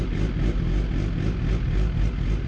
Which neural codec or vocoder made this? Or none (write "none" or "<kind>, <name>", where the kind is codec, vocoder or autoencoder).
none